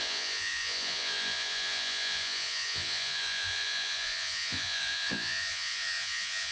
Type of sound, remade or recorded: remade